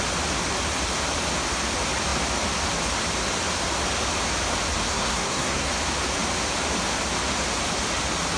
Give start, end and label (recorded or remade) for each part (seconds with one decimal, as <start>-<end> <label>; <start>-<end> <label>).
0.0-4.9 recorded; 4.9-5.7 remade; 5.7-8.4 recorded